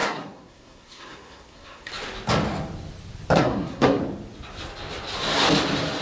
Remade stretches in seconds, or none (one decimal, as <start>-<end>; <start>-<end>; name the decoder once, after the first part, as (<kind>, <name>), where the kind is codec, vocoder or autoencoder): 0.0-1.9 (codec, SNAC); 3.3-4.0